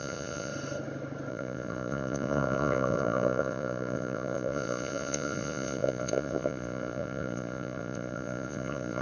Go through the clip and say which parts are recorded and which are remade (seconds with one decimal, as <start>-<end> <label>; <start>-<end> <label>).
0.0-0.5 remade; 0.5-1.3 recorded; 1.3-9.0 remade